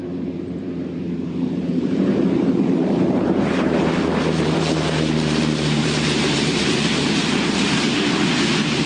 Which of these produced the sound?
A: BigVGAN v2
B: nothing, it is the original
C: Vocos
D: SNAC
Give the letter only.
A